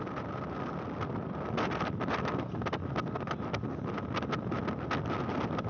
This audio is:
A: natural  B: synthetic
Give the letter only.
A